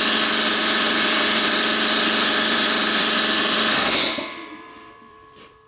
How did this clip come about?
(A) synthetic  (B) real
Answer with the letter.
A